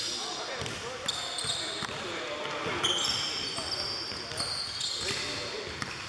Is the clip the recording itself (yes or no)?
yes